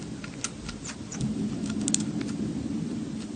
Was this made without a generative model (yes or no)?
yes